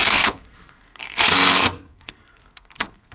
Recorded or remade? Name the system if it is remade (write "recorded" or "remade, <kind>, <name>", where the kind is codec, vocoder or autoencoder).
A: remade, codec, SNAC